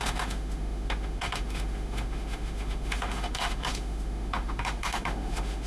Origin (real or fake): fake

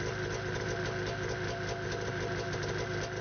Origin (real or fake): real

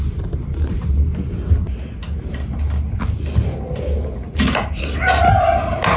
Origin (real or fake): real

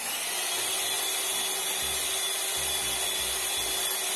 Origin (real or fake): real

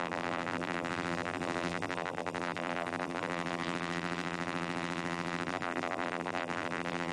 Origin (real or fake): fake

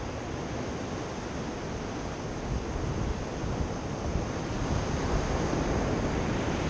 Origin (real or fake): real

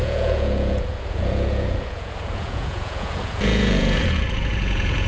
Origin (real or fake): fake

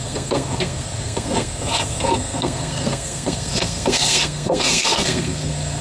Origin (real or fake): fake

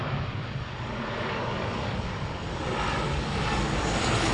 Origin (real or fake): fake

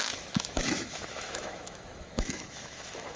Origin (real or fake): fake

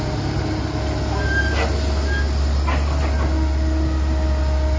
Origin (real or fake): real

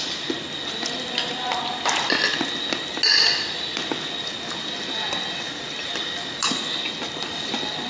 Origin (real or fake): real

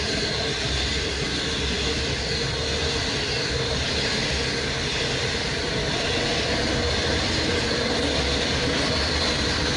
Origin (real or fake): real